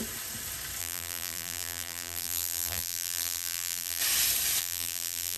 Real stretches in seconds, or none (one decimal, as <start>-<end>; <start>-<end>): 0.0-0.8; 4.0-4.6